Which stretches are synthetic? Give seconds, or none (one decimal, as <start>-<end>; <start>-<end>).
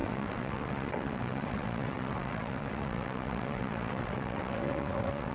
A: 0.0-5.3